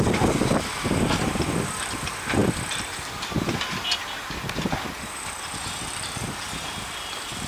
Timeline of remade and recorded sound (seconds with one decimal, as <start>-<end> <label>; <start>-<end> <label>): 0.0-7.5 recorded